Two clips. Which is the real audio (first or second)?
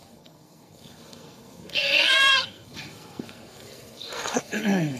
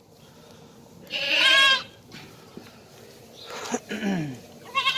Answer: second